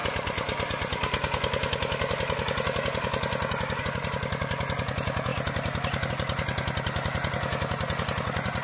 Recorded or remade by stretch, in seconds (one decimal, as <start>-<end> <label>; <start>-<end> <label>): 0.0-8.6 recorded